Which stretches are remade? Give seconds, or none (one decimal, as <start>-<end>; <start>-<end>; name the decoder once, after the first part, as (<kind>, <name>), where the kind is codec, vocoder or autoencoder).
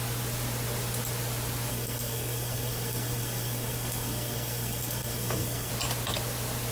1.7-5.7 (codec, SNAC)